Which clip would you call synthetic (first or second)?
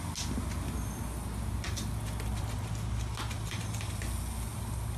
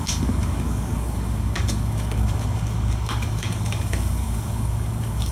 second